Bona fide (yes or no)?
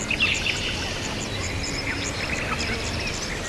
yes